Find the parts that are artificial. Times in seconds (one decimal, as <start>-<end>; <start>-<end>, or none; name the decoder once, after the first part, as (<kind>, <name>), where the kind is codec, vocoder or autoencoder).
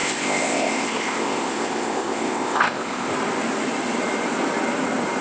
0.0-3.1 (codec, ZipCodec)